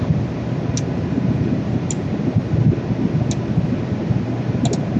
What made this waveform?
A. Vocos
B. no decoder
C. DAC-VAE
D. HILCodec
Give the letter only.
B